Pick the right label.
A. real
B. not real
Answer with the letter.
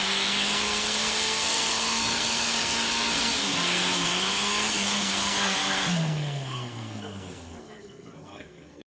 B